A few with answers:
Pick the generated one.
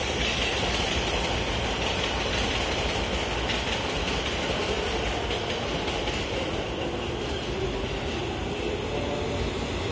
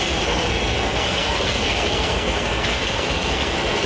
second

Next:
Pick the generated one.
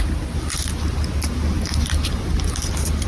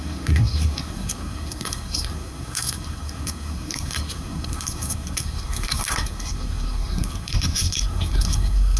second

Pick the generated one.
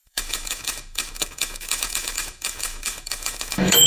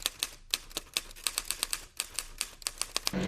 first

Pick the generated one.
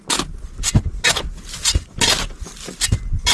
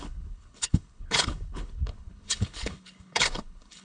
second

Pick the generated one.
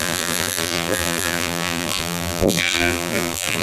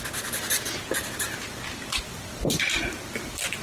first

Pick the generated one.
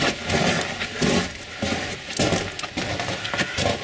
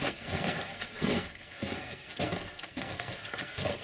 second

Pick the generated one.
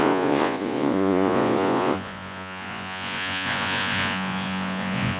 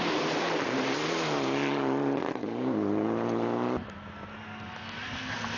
first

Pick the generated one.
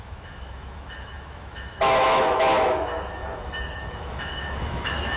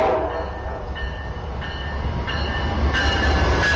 first